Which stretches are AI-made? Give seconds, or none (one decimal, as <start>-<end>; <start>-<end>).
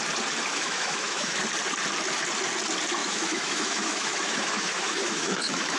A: 0.5-1.4; 3.0-5.8